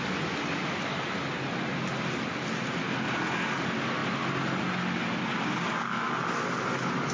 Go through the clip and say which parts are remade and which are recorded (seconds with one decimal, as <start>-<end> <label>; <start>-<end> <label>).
0.0-5.3 recorded; 5.3-6.1 remade; 6.1-7.1 recorded